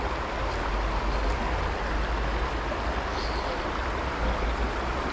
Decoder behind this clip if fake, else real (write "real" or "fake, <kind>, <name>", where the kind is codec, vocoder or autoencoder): real